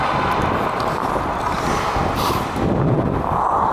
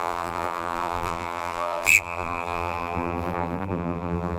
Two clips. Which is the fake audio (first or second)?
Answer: second